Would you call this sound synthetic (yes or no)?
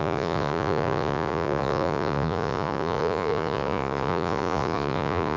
yes